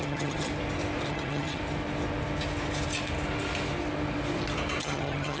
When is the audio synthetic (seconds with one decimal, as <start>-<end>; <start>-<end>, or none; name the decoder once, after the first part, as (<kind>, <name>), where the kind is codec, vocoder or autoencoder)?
0.0-0.5 (vocoder, HiFi-GAN); 1.1-1.6; 4.8-5.4